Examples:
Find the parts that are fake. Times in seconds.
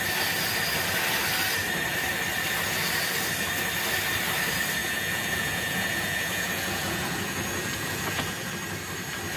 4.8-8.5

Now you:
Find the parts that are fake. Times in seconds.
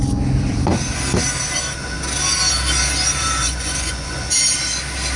3.4-4.2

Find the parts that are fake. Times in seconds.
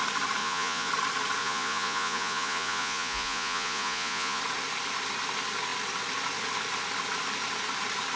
0.4-0.9; 1.4-4.4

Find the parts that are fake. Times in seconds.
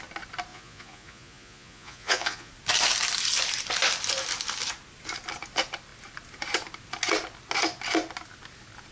0.5-2.5